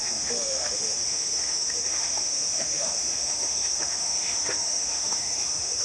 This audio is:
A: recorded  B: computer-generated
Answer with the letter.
B